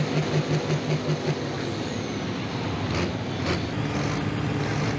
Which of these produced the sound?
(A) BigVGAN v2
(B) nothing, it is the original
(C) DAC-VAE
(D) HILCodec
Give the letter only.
B